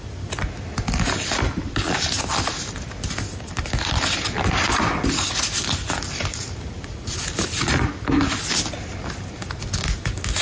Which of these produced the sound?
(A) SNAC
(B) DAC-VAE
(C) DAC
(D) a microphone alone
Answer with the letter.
D